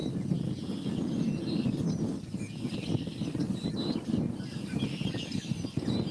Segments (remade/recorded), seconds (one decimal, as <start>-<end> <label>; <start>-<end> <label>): 0.0-6.1 recorded